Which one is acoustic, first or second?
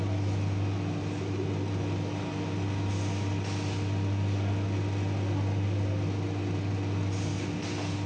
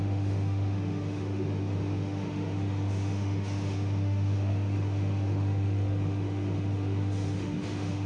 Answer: first